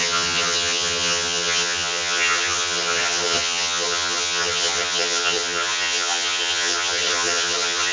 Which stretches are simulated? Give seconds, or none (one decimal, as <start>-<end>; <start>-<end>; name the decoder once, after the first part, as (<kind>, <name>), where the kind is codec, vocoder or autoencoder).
0.0-7.9 (vocoder, HiFi-GAN)